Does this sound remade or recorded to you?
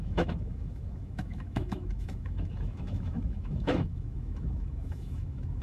remade